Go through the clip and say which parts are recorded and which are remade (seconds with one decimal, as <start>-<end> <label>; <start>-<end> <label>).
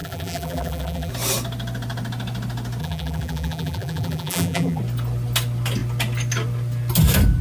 0.0-1.1 remade; 1.1-2.8 recorded; 2.8-4.8 remade; 4.8-7.4 recorded